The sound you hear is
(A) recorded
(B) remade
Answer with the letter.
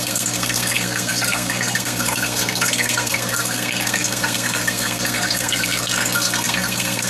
B